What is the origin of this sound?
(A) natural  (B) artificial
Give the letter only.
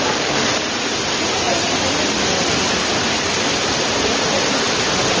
A